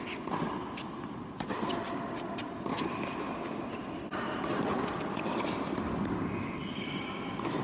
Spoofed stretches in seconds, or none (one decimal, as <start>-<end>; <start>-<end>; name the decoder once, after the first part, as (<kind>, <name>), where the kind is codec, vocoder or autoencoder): none